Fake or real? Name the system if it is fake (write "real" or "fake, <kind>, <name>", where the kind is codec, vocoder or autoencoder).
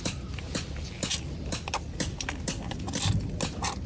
real